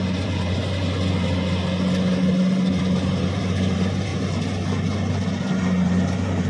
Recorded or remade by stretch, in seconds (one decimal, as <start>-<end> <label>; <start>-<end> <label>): 0.0-0.6 remade; 0.6-2.8 recorded; 2.8-4.1 remade; 4.1-5.1 recorded; 5.1-6.5 remade